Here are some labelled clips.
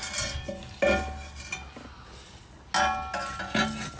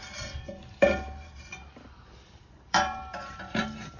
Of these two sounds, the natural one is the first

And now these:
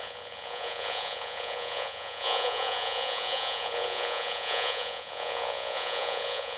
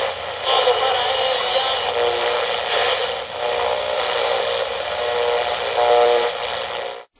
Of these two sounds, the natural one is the second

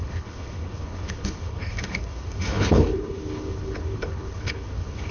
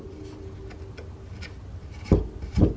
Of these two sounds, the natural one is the second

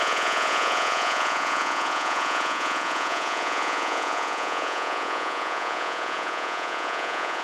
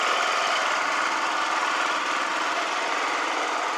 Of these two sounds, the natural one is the second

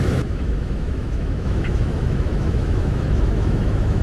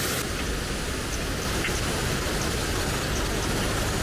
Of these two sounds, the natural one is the second